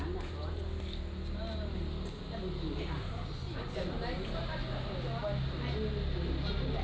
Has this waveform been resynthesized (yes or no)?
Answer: no